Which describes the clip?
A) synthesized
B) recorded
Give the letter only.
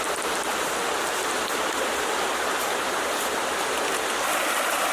B